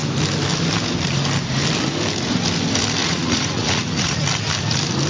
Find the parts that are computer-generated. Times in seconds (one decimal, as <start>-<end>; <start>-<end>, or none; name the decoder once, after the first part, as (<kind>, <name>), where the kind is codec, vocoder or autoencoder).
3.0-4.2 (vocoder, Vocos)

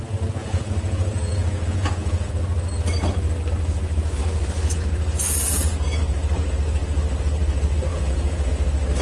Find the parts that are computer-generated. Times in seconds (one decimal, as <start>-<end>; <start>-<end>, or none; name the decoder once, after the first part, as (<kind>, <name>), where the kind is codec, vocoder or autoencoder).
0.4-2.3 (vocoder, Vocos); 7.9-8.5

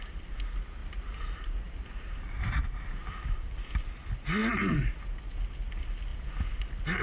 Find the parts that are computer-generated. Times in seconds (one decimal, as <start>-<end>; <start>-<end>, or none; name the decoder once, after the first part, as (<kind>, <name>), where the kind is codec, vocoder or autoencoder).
0.8-2.5 (vocoder, BigVGAN v2); 4.4-4.9

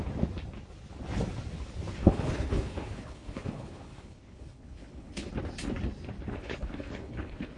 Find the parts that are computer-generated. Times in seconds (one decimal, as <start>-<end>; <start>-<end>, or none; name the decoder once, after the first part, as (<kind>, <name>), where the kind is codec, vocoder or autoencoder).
2.0-5.3 (codec, HILCodec); 6.3-7.6

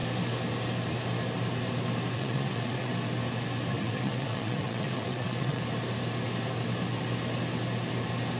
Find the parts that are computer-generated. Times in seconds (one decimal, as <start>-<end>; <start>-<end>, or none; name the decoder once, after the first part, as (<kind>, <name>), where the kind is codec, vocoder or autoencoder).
2.1-2.9 (vocoder, WaveNeXt); 3.7-5.6

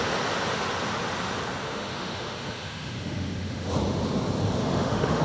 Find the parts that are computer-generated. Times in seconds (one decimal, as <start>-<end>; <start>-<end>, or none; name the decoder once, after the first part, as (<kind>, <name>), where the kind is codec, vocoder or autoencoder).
1.6-3.7 (autoencoder, DAC-VAE); 4.6-5.2

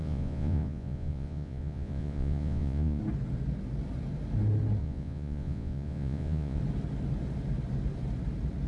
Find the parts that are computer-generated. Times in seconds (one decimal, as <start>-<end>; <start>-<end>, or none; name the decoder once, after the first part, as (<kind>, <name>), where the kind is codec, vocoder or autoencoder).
0.0-3.0 (vocoder, Vocos); 4.8-6.6